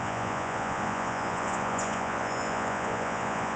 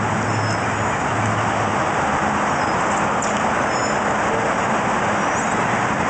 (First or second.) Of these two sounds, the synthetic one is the first